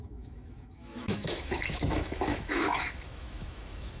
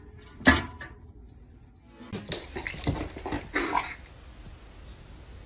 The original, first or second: second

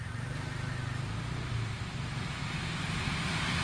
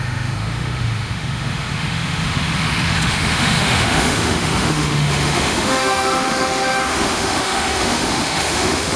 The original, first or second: first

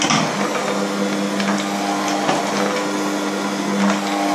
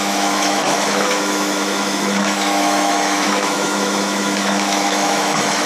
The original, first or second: first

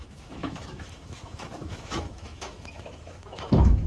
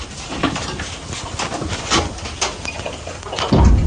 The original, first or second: second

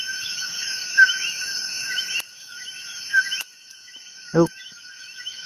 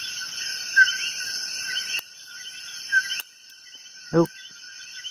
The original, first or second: second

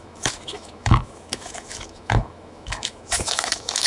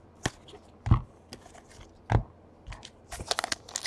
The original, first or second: second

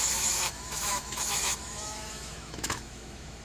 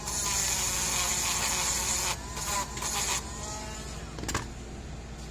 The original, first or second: second